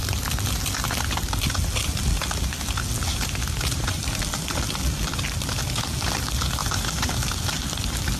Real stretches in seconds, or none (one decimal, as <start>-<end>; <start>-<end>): 0.0-3.1; 4.2-6.6; 7.1-8.2